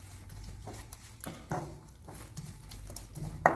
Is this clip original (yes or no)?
yes